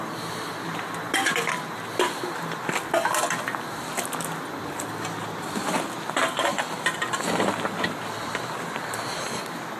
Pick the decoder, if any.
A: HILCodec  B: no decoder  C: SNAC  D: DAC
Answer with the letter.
B